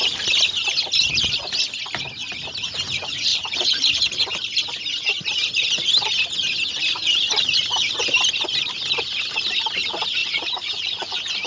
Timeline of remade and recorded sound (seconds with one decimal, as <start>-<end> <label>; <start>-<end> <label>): 0.0-3.3 recorded; 3.3-3.8 remade; 3.8-10.2 recorded; 10.2-11.1 remade; 11.1-11.5 recorded